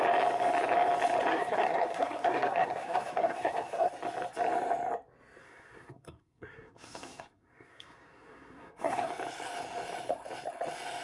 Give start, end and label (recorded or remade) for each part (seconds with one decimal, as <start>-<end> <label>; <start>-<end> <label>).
0.0-1.3 recorded; 1.3-3.9 remade; 3.9-5.4 recorded; 5.4-9.1 remade; 9.1-11.0 recorded